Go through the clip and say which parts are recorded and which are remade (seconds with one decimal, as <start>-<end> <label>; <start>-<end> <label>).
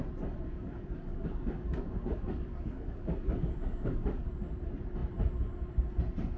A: 0.0-0.5 recorded; 0.5-4.3 remade; 4.3-6.4 recorded